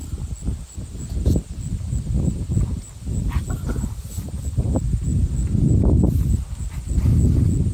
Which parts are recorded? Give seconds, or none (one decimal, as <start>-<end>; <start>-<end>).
0.0-7.7

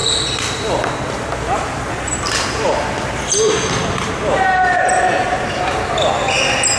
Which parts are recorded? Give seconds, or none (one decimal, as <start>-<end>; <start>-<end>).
0.0-6.8